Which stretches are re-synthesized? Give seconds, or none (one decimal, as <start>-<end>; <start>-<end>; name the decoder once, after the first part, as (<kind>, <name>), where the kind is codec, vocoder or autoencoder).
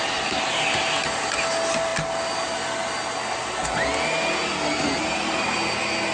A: none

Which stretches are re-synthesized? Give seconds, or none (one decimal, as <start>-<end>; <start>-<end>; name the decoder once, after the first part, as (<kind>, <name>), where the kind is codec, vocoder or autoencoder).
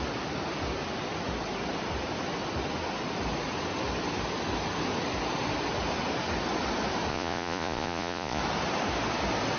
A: 7.1-8.4 (vocoder, Vocos)